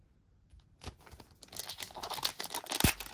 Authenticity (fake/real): real